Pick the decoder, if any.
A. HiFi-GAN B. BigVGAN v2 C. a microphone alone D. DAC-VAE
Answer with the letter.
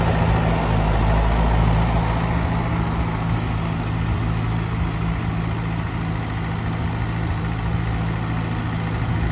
C